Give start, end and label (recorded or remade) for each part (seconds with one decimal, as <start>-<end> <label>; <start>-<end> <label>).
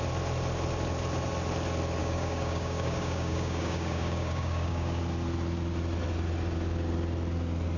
0.0-2.0 recorded; 2.0-5.0 remade; 5.0-7.8 recorded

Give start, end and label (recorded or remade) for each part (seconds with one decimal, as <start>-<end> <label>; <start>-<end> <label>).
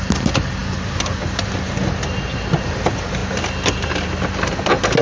0.0-5.0 recorded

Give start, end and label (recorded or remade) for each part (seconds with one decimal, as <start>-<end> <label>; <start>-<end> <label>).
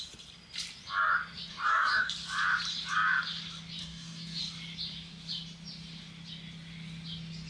0.0-1.5 recorded; 1.5-2.1 remade; 2.1-3.8 recorded; 3.8-4.4 remade; 4.4-7.5 recorded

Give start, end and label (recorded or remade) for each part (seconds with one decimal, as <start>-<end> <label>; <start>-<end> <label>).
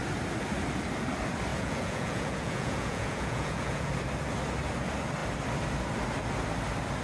0.0-1.5 recorded; 1.5-3.9 remade; 3.9-7.0 recorded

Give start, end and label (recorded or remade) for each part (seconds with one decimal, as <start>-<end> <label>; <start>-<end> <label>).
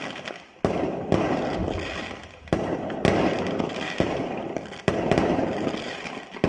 0.0-6.5 recorded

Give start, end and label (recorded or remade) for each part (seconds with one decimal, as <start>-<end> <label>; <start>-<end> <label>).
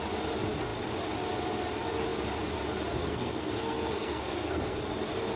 0.0-3.0 recorded; 3.0-4.8 remade; 4.8-5.4 recorded